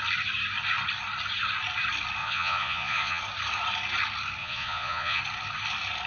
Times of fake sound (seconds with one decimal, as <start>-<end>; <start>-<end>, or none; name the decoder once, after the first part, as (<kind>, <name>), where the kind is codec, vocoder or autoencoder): 2.2-3.2 (vocoder, Vocos); 4.4-5.2